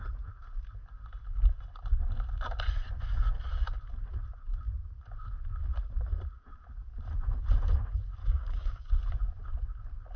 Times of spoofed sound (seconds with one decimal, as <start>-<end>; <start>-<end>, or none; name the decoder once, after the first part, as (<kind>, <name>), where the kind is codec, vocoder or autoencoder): 8.2-8.9 (codec, DAC)